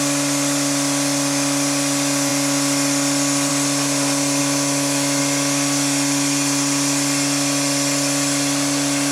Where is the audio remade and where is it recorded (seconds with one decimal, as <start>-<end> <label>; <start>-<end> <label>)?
0.0-4.4 recorded; 4.4-5.2 remade; 5.2-9.1 recorded